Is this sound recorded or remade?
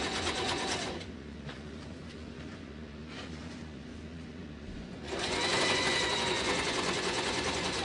remade